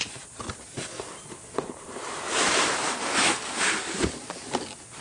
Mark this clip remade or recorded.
recorded